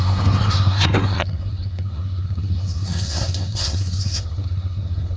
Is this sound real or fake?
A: fake